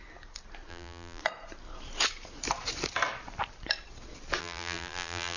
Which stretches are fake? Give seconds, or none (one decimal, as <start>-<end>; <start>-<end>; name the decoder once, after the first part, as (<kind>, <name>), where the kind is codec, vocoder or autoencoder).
0.7-1.2 (vocoder, BigVGAN v2); 4.4-5.4